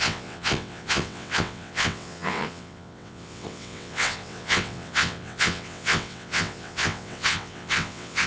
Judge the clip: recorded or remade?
remade